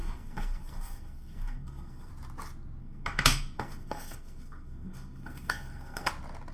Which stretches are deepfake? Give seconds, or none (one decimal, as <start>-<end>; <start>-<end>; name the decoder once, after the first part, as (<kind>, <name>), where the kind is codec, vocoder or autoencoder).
0.0-2.1 (codec, SNAC); 2.8-6.1